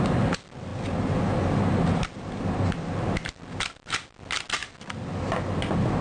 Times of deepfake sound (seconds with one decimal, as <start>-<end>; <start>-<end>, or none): none